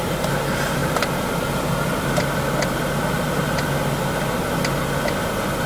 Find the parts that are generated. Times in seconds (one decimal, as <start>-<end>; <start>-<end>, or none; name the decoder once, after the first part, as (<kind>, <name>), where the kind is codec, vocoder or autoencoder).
0.8-2.4 (vocoder, BigVGAN v2)